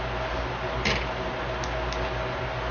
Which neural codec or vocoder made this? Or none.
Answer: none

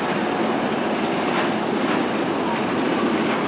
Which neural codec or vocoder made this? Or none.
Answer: none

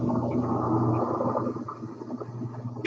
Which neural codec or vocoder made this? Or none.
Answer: none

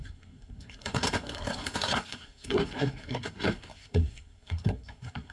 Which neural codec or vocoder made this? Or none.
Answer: codec, SNAC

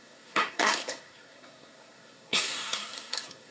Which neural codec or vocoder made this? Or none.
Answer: codec, SNAC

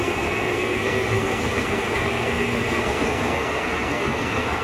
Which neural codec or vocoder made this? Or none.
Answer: codec, SNAC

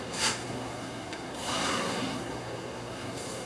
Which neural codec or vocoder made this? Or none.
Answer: codec, SNAC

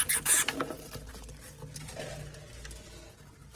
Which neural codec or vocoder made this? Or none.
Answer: none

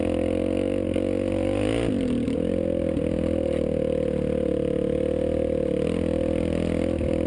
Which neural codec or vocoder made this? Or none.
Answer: none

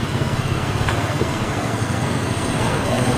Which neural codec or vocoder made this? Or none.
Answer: codec, SNAC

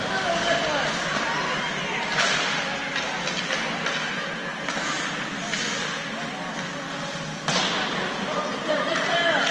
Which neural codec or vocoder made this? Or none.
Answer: none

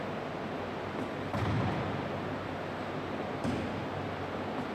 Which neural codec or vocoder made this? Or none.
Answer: none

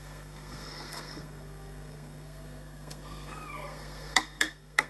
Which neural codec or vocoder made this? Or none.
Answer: codec, SNAC